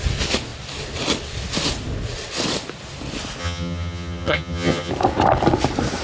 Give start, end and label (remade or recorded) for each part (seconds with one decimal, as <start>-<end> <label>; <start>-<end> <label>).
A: 0.0-3.4 recorded; 3.4-4.9 remade; 4.9-6.0 recorded